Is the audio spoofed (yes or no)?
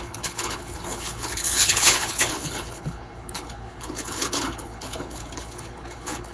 yes